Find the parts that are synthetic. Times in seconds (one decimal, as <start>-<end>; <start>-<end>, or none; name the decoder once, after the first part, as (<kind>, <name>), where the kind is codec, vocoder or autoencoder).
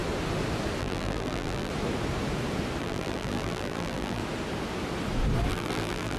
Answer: 0.8-1.7 (vocoder, BigVGAN v2); 2.8-4.2; 5.5-6.2